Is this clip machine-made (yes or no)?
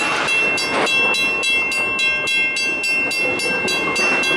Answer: no